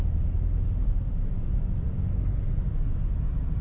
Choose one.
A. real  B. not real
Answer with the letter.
A